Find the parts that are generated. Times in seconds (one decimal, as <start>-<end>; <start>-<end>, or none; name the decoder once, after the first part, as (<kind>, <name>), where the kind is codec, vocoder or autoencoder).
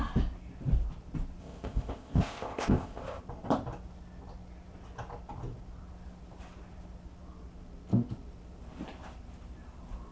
1.4-3.2 (codec, ZipCodec)